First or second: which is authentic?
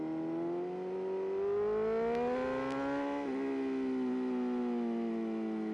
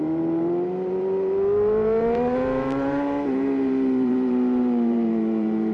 first